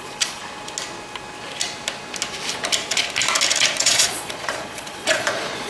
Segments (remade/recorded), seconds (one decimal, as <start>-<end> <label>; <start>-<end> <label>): 0.0-0.4 remade; 0.4-3.8 recorded; 3.8-5.7 remade